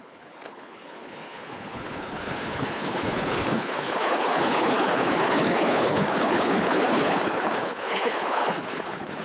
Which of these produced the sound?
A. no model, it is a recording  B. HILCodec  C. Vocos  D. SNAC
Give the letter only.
B